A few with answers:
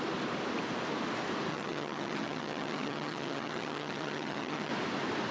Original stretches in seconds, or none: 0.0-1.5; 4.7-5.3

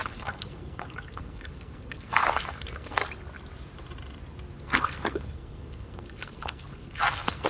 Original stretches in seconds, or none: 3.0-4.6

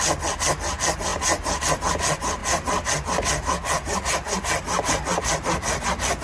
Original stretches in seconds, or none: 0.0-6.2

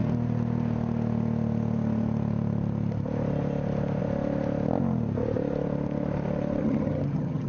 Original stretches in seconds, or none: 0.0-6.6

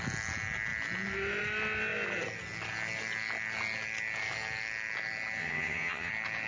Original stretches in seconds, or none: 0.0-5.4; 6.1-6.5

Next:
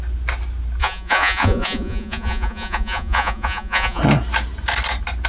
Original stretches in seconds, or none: 0.0-0.8; 4.0-5.3

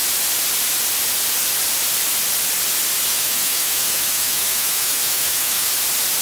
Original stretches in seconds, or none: 0.0-3.1; 5.7-6.2

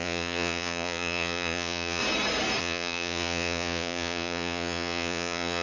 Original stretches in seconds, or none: 2.0-2.6